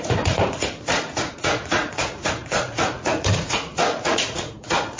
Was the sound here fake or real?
fake